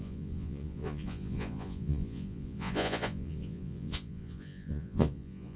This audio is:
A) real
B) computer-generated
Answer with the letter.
B